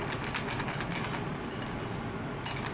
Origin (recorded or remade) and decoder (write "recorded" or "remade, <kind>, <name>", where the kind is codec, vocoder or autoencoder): recorded